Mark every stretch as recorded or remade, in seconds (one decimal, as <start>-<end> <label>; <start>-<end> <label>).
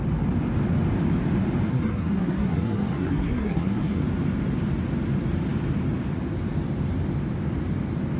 0.0-1.7 recorded; 1.7-4.0 remade; 4.0-8.2 recorded